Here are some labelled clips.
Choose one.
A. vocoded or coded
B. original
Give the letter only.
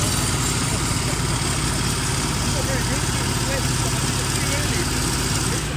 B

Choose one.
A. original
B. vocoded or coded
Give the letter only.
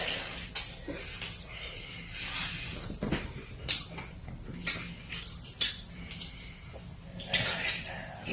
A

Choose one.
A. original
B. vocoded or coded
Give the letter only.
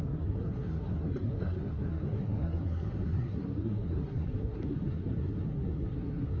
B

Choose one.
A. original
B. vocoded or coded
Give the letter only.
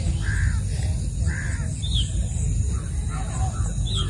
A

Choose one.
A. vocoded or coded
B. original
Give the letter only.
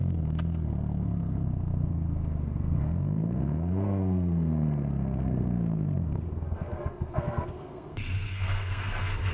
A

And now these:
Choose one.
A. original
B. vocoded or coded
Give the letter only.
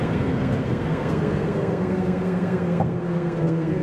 B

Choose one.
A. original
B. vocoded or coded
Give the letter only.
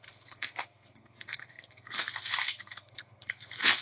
B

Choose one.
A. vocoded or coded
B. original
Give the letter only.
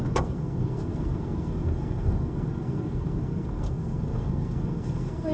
A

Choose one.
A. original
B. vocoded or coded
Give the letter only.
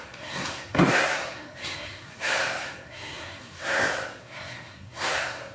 B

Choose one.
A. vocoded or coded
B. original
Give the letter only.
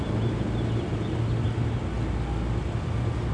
B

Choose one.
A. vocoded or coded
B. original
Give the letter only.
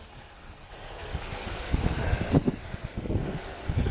A